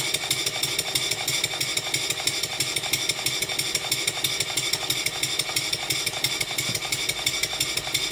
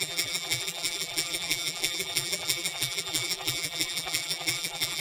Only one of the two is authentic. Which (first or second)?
first